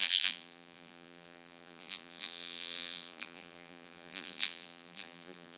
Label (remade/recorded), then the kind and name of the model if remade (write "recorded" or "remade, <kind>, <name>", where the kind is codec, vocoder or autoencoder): remade, vocoder, BigVGAN v2